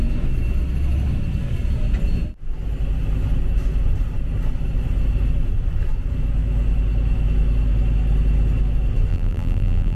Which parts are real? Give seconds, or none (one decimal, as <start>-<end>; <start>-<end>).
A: 0.0-9.1